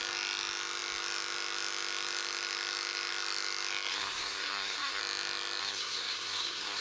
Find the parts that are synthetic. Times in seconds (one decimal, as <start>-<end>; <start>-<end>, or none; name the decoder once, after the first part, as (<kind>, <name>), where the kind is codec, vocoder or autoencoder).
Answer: 3.9-5.0 (codec, SNAC); 5.6-6.8